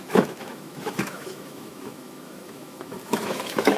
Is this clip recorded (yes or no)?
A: no